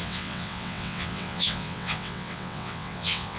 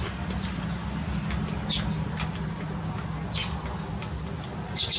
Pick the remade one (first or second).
first